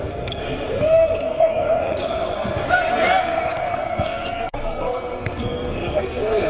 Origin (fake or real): fake